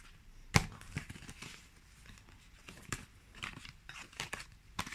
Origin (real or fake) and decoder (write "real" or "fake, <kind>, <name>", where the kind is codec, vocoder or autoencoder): fake, vocoder, BigVGAN v2